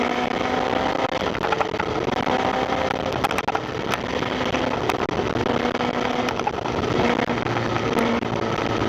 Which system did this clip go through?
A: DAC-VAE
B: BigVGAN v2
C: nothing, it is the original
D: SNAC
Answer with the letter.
C